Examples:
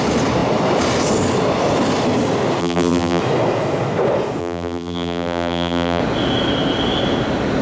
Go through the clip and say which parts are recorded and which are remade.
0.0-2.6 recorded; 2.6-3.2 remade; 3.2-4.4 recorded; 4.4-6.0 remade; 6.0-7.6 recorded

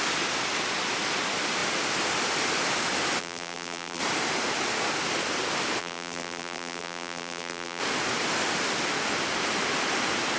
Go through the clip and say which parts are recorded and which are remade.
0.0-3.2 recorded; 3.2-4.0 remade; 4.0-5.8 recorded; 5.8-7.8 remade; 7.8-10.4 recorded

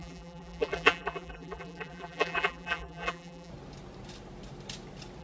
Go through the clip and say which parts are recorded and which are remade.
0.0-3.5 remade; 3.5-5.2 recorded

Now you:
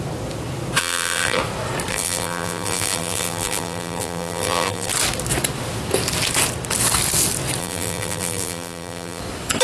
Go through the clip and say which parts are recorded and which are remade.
0.0-0.8 recorded; 0.8-1.4 remade; 1.4-1.9 recorded; 1.9-4.9 remade; 4.9-7.6 recorded; 7.6-9.2 remade; 9.2-9.6 recorded

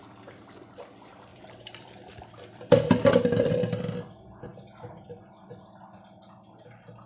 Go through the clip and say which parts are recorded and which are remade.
0.0-1.3 recorded; 1.3-3.8 remade; 3.8-4.5 recorded; 4.5-5.2 remade; 5.2-7.1 recorded

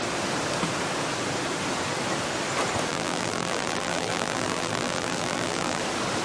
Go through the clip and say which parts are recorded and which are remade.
0.0-2.9 recorded; 2.9-5.8 remade; 5.8-6.2 recorded

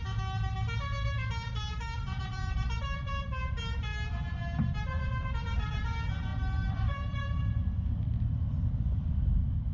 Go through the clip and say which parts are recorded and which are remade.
0.0-2.0 recorded; 2.0-3.3 remade; 3.3-6.3 recorded; 6.3-7.7 remade; 7.7-9.7 recorded

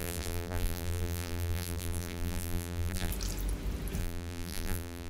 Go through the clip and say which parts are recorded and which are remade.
0.0-3.1 remade; 3.1-4.0 recorded; 4.0-5.1 remade